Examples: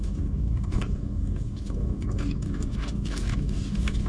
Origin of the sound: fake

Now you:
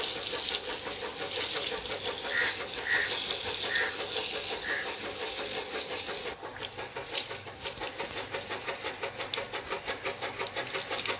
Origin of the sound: real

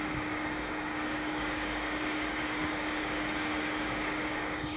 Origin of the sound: fake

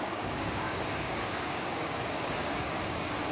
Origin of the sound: fake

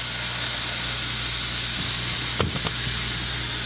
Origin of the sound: real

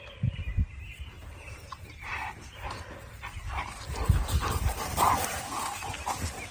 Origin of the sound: real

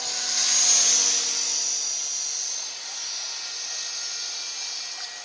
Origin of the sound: real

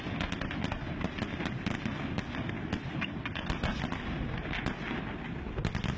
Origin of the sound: real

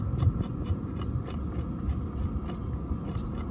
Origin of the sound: real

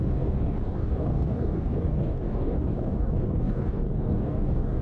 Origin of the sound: fake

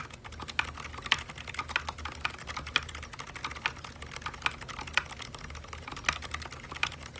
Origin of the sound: real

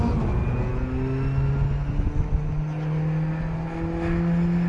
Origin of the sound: real